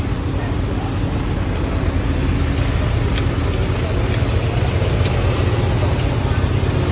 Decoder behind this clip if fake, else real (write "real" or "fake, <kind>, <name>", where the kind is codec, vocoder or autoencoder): real